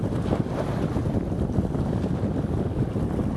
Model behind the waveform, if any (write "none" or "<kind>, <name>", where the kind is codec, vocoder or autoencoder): none